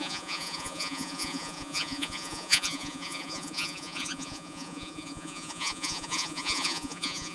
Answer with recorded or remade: remade